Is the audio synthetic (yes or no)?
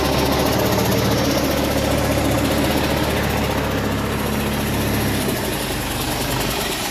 no